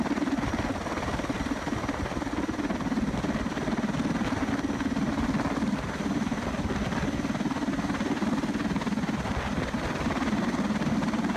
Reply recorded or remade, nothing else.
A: recorded